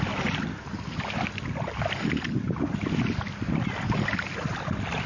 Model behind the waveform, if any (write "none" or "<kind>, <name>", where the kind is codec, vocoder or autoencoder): none